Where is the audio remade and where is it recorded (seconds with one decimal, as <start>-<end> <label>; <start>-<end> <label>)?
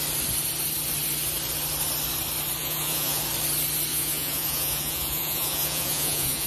0.0-2.6 recorded; 2.6-3.2 remade; 3.2-3.9 recorded; 3.9-6.5 remade